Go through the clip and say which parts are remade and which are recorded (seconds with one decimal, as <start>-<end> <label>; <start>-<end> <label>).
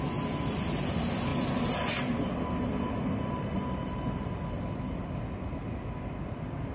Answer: 0.0-6.7 recorded